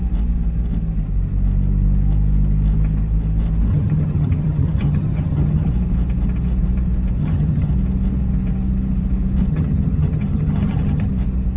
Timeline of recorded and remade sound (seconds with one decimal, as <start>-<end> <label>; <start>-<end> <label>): 0.0-3.7 recorded; 3.7-5.7 remade; 5.7-7.2 recorded; 7.2-7.7 remade; 7.7-9.5 recorded; 9.5-11.1 remade; 11.1-11.6 recorded